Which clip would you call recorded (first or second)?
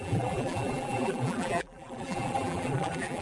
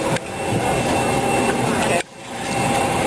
second